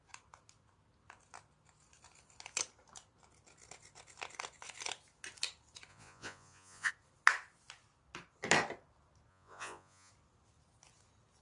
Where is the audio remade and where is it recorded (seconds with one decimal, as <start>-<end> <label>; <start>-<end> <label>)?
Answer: 0.0-5.9 recorded; 5.9-6.9 remade; 6.9-9.3 recorded; 9.3-10.1 remade; 10.1-11.4 recorded